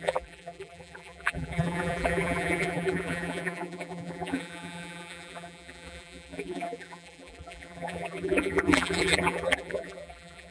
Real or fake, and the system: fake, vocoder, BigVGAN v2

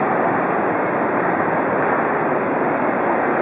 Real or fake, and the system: real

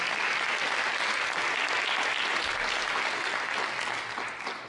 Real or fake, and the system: real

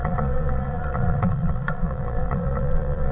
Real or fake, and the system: fake, vocoder, Vocos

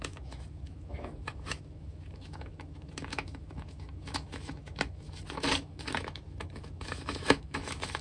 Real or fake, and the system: fake, autoencoder, DAC-VAE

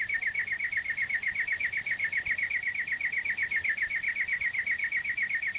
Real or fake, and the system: real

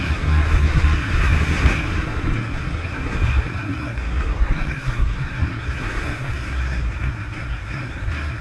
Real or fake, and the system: fake, codec, SNAC